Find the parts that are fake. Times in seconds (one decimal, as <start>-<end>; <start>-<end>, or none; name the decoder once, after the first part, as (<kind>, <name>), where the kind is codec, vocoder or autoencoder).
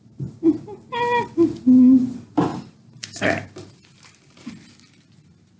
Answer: 2.5-4.5 (vocoder, BigVGAN v2)